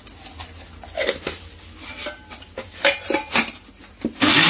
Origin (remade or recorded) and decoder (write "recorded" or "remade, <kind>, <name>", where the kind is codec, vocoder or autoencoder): recorded